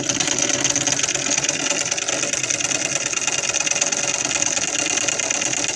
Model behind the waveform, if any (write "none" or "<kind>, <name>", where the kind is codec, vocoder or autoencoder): none